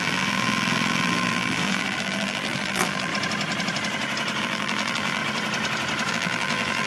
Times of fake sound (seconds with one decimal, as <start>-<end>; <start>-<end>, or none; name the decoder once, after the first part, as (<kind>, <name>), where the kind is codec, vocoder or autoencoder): 0.0-3.1 (vocoder, BigVGAN v2); 4.4-5.2; 6.1-6.9